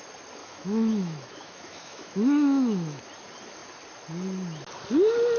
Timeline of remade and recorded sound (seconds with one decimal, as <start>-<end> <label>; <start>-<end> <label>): 0.0-0.4 recorded; 0.4-3.0 remade; 3.0-5.4 recorded